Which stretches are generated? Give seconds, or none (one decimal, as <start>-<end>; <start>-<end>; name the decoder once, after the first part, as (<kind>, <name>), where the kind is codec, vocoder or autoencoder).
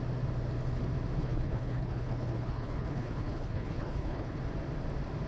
1.2-4.4 (codec, HILCodec)